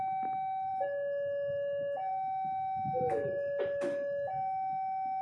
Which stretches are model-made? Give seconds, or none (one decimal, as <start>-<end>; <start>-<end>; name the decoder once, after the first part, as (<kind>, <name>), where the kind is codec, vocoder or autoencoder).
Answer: none